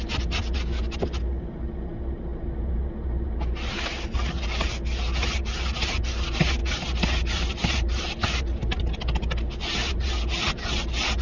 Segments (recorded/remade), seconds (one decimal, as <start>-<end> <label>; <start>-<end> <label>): 0.0-11.2 recorded